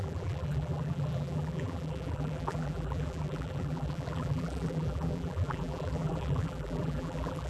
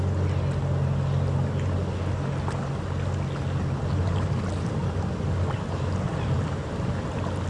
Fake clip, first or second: first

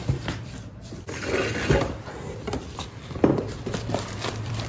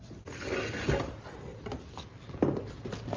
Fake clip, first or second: first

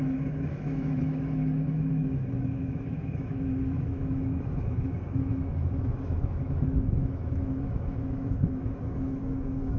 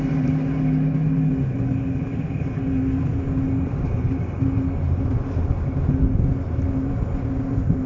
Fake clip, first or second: first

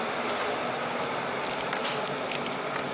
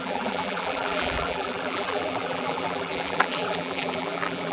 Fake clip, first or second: second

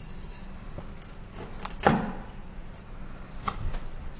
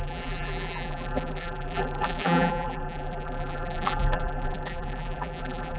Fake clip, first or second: second